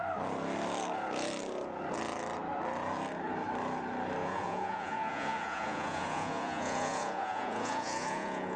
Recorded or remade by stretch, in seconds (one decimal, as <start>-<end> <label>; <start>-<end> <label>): 0.0-4.2 recorded; 4.2-8.6 remade